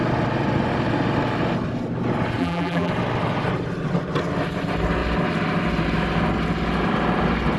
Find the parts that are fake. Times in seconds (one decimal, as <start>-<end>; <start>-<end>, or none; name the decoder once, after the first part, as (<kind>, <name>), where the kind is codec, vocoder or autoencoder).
2.4-2.9 (vocoder, BigVGAN v2)